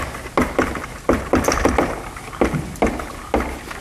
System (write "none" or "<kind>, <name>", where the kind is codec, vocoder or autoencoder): none